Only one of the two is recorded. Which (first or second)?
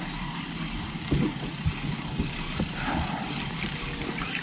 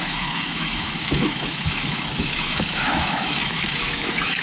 first